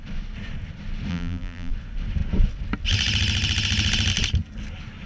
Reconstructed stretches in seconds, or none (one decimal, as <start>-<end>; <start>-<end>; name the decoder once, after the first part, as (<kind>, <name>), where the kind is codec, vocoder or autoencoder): 1.1-1.7 (vocoder, BigVGAN v2)